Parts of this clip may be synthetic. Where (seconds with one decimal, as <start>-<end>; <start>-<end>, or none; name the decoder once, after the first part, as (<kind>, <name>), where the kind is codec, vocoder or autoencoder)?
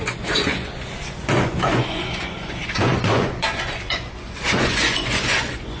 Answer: 0.0-5.8 (vocoder, Vocos)